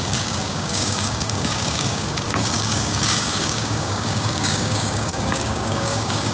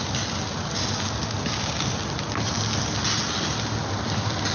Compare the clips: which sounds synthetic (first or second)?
first